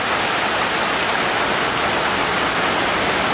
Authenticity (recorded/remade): recorded